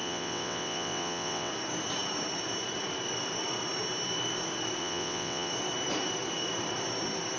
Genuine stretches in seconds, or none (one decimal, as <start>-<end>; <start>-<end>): 1.5-4.8; 5.5-7.4